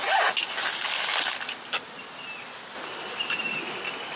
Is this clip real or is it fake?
real